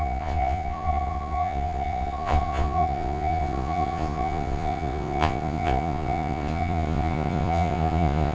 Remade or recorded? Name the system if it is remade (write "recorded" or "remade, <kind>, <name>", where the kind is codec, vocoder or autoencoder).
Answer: remade, vocoder, Vocos